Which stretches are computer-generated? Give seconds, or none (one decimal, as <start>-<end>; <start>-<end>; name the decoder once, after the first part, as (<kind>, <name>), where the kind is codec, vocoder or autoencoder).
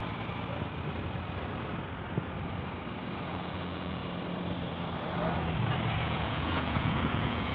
3.3-4.0 (vocoder, Vocos); 6.0-7.5